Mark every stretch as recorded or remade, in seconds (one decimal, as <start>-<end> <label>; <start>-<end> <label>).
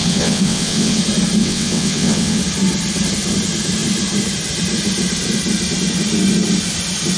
0.0-1.0 remade; 1.0-1.4 recorded; 1.4-2.4 remade; 2.4-7.2 recorded